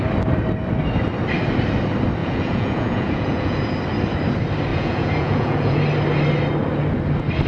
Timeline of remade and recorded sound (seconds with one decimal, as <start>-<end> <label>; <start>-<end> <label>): 0.0-2.2 recorded; 2.2-3.7 remade; 3.7-4.7 recorded; 4.7-5.8 remade; 5.8-7.5 recorded